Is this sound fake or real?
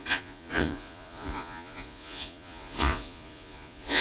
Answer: fake